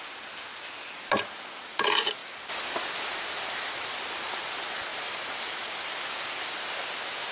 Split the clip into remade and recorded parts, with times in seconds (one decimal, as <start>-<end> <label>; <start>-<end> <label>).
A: 0.0-2.2 recorded; 2.2-4.0 remade; 4.0-4.9 recorded; 4.9-5.9 remade; 5.9-7.3 recorded